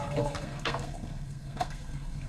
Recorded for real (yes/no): no